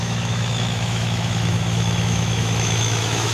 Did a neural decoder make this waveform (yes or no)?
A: yes